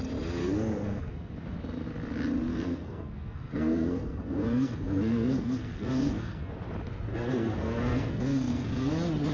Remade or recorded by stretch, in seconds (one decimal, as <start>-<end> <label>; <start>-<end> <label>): 0.0-0.4 recorded; 0.4-1.3 remade; 1.3-2.5 recorded; 2.5-6.5 remade; 6.5-7.1 recorded; 7.1-8.9 remade; 8.9-9.3 recorded